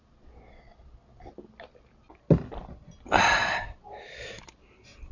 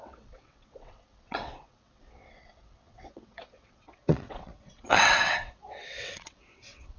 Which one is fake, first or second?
second